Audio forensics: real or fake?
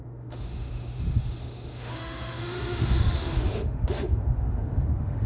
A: fake